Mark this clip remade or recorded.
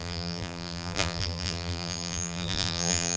remade